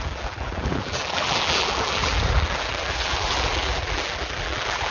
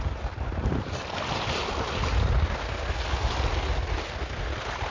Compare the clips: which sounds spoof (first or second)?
first